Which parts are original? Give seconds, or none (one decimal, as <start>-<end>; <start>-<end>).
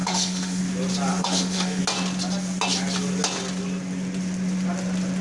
0.6-1.1; 1.8-5.2